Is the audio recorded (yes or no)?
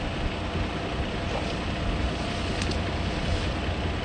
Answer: yes